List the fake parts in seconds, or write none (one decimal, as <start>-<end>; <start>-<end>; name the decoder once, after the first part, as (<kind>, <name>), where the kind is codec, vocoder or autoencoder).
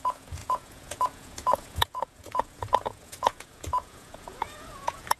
0.0-5.2 (vocoder, Vocos)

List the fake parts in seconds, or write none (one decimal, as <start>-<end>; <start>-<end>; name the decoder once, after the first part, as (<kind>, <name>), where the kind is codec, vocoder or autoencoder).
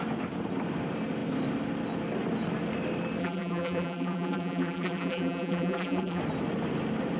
3.2-6.2 (vocoder, BigVGAN v2)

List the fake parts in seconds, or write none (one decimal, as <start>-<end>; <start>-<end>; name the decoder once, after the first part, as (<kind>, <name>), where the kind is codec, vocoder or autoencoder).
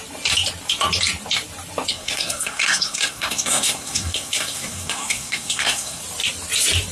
1.9-6.0 (codec, SNAC)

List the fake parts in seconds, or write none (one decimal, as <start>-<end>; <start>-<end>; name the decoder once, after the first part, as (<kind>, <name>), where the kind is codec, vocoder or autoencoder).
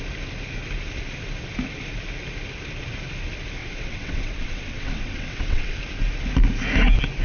3.6-5.8 (vocoder, WaveNeXt)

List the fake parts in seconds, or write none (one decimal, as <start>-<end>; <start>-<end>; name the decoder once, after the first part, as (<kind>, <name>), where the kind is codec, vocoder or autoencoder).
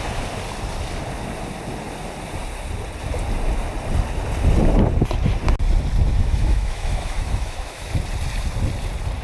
6.2-7.9 (autoencoder, DAC-VAE)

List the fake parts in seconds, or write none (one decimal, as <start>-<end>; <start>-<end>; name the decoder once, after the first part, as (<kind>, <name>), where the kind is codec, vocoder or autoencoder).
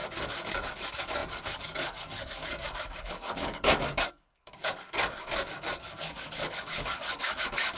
0.0-7.8 (codec, DAC)